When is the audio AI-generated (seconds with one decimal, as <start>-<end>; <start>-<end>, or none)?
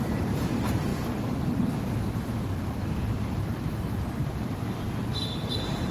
0.0-0.9; 2.9-5.9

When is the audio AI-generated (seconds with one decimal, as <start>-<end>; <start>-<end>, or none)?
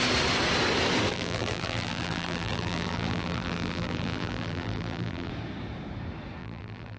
1.1-5.3; 6.4-7.0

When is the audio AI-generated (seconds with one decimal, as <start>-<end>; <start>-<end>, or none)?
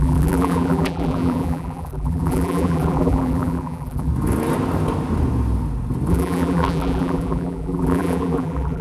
0.0-4.1; 6.1-8.8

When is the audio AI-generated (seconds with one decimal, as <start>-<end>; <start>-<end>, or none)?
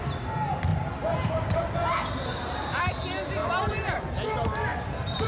0.7-2.8; 3.4-4.0; 4.7-5.3